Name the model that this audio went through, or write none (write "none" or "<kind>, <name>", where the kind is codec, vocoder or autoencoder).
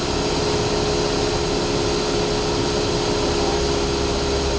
none